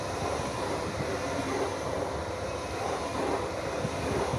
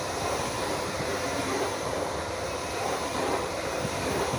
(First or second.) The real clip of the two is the first